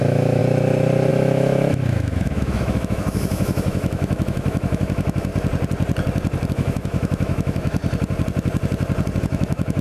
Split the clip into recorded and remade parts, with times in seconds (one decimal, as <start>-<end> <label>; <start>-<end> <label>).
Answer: 0.0-0.4 remade; 0.4-1.1 recorded; 1.1-5.3 remade; 5.3-6.5 recorded; 6.5-7.8 remade; 7.8-9.2 recorded; 9.2-9.8 remade